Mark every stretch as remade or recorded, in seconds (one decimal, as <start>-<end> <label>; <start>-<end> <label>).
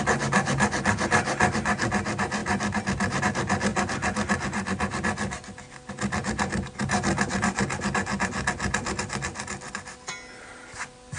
0.0-11.2 recorded